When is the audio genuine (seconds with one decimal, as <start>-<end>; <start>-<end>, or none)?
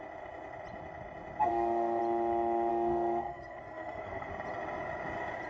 0.0-1.5; 2.0-2.7; 4.3-5.5